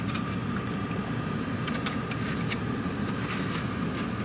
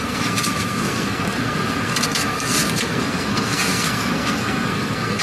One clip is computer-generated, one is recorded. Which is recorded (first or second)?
first